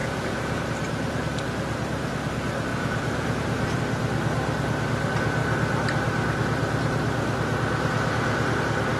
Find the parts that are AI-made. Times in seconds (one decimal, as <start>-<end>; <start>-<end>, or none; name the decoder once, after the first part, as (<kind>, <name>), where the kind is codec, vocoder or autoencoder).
0.0-0.6 (vocoder, Vocos); 2.7-3.8